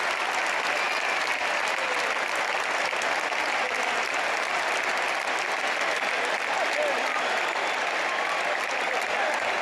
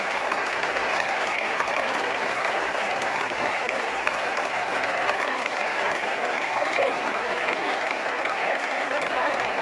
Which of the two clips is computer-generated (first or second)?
second